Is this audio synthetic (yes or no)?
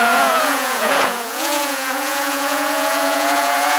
yes